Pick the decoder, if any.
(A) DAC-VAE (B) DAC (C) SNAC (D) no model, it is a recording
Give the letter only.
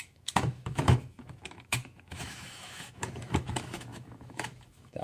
A